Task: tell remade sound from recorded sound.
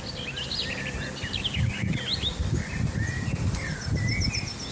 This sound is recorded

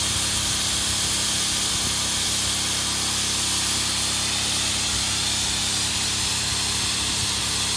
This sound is recorded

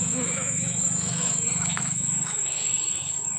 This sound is remade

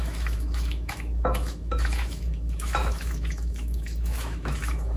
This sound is remade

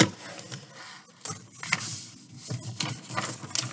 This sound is recorded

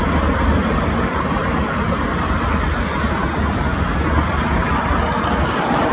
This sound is recorded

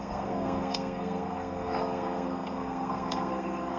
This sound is remade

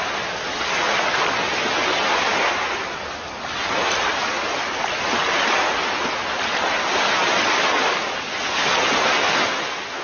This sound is recorded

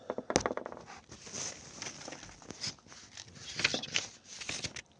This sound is recorded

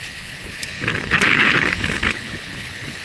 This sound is remade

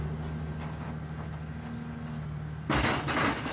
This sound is recorded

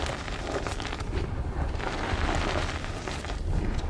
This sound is recorded